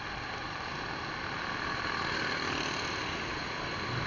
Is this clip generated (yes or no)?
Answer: no